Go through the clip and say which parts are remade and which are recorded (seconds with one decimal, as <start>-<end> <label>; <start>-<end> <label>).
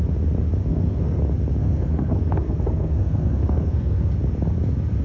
0.0-0.7 recorded; 0.7-1.2 remade; 1.2-1.6 recorded; 1.6-4.1 remade; 4.1-5.0 recorded